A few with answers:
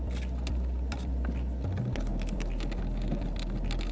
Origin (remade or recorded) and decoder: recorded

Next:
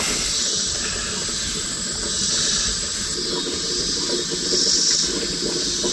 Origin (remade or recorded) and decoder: recorded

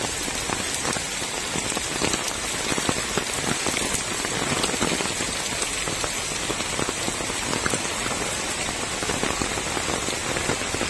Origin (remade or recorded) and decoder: recorded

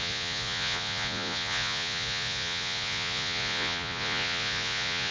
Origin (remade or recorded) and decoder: remade, vocoder, Vocos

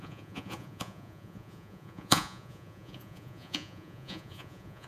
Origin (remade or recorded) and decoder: remade, vocoder, Vocos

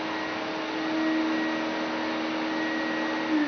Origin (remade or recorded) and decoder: recorded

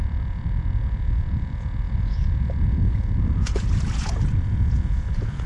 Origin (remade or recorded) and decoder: remade, vocoder, Vocos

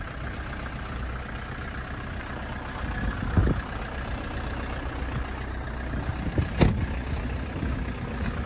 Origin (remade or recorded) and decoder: recorded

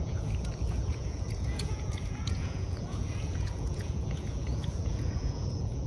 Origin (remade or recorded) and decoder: remade, vocoder, Vocos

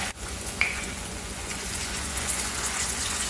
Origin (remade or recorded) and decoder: remade, vocoder, Vocos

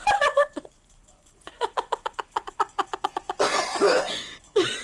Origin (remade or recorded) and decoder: remade, vocoder, Vocos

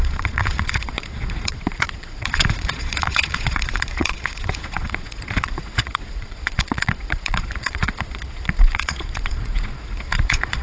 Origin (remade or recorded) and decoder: remade, vocoder, Vocos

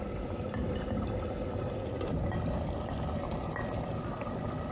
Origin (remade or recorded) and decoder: recorded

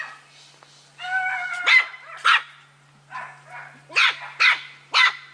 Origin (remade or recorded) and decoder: recorded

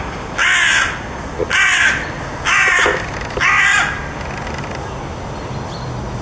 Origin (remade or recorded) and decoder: recorded